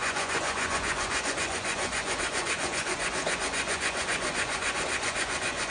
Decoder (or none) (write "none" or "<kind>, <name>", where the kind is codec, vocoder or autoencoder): vocoder, Vocos